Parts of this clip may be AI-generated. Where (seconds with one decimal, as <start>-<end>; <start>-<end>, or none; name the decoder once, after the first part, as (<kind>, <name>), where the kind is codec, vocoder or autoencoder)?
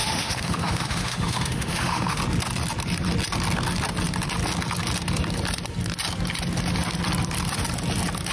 0.0-2.2 (autoencoder, DAC-VAE)